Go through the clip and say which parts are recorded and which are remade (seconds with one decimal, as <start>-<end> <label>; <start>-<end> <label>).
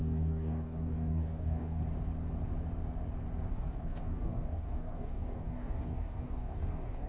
0.0-1.8 remade; 1.8-3.5 recorded; 3.5-7.1 remade